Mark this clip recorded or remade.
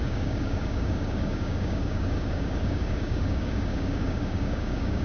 remade